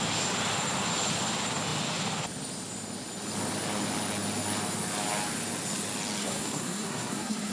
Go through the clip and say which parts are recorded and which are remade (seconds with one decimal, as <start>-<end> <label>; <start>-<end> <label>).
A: 0.0-6.2 recorded; 6.2-7.5 remade